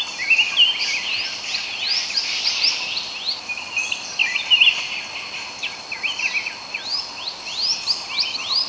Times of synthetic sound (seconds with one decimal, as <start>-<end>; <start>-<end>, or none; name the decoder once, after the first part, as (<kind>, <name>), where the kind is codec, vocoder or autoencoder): none